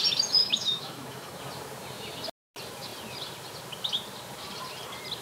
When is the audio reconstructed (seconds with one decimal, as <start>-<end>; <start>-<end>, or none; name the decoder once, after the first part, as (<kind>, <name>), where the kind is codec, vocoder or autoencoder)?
0.4-1.4 (autoencoder, DAC-VAE)